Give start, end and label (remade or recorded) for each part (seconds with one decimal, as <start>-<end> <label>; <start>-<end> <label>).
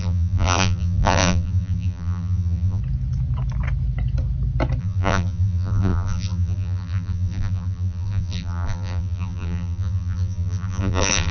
0.0-2.8 remade; 2.8-4.8 recorded; 4.8-11.3 remade